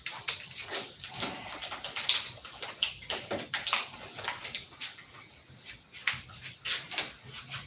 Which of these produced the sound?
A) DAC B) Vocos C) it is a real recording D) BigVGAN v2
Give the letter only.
C